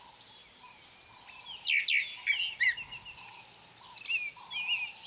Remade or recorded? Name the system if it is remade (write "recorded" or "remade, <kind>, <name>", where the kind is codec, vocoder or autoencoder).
recorded